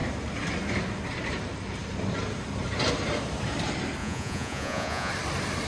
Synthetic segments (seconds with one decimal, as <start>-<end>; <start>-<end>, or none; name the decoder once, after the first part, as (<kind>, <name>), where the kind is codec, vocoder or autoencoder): 4.0-5.1 (vocoder, Vocos)